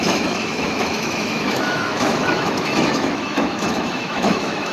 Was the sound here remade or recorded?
remade